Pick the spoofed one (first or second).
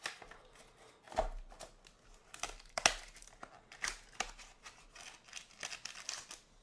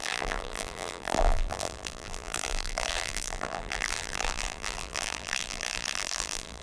second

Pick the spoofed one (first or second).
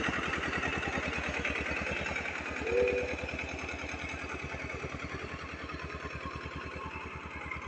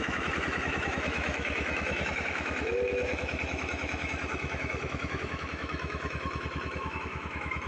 second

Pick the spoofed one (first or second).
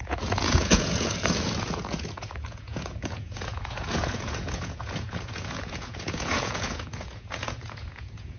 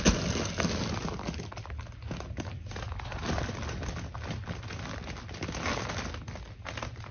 first